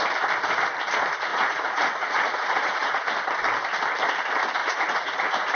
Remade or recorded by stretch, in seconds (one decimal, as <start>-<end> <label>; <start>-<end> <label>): 0.0-1.3 recorded; 1.3-3.1 remade; 3.1-4.6 recorded; 4.6-5.5 remade